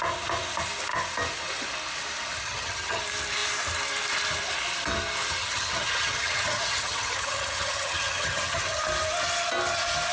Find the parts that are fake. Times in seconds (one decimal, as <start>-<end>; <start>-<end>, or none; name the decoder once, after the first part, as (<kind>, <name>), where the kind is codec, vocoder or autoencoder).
2.4-3.0 (vocoder, HiFi-GAN); 5.4-8.8